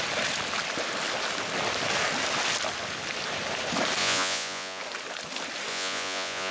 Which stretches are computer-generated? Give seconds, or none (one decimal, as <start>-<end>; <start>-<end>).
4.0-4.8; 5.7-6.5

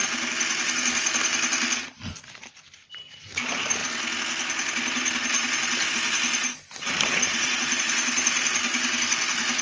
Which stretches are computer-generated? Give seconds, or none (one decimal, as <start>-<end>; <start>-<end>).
7.3-7.8

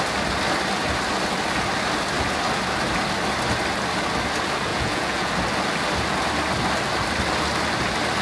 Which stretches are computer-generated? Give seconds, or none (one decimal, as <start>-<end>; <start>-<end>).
4.7-5.3